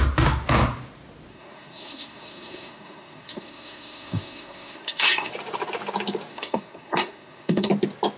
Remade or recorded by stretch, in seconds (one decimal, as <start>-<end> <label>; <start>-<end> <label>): 0.0-1.3 recorded; 1.3-5.3 remade; 5.3-6.3 recorded; 6.3-7.7 remade; 7.7-8.2 recorded